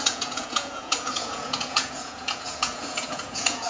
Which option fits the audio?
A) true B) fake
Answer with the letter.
B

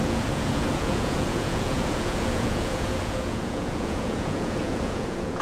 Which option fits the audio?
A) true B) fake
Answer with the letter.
B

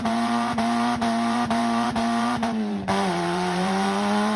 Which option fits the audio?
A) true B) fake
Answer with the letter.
B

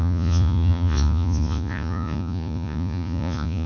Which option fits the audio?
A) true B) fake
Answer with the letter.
B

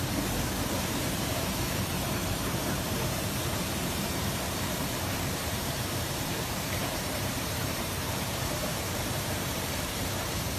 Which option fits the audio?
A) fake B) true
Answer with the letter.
A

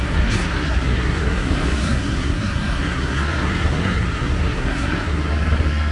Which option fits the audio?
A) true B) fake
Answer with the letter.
B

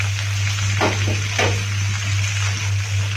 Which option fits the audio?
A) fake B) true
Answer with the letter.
B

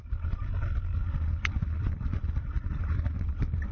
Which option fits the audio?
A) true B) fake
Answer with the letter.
A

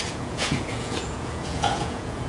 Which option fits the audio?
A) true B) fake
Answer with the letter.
B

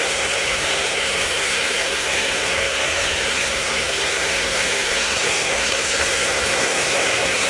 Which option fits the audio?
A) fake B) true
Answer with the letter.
A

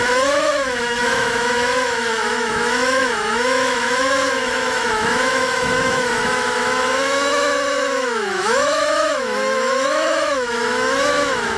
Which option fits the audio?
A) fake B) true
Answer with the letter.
A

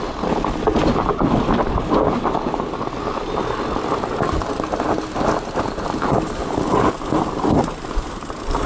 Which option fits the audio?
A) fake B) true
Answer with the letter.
B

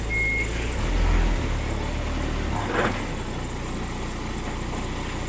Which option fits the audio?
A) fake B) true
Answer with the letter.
B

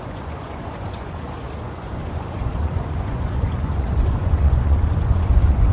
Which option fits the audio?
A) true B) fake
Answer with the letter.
B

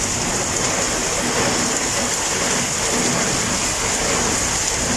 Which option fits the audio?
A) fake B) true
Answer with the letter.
B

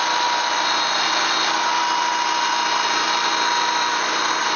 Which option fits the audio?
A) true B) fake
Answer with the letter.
A